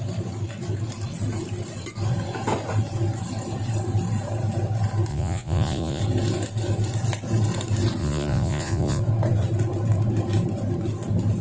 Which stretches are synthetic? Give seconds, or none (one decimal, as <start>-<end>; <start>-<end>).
5.1-6.0; 8.0-9.0